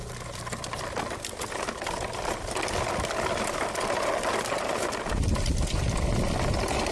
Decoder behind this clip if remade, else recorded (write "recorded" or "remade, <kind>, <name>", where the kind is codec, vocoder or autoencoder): recorded